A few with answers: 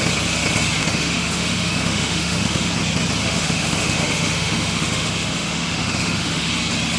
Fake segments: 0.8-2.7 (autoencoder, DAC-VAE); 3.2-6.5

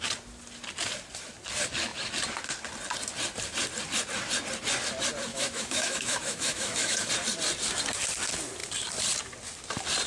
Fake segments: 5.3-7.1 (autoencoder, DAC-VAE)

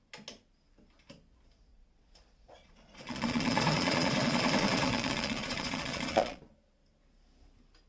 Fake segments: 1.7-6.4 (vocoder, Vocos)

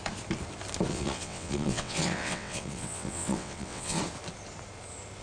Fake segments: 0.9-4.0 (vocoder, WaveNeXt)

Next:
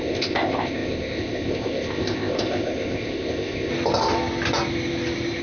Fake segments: 0.0-3.7 (codec, ZipCodec)